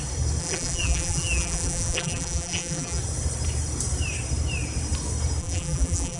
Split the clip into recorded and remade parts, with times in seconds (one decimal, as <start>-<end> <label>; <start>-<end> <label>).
0.0-0.4 recorded; 0.4-3.0 remade; 3.0-5.4 recorded; 5.4-6.2 remade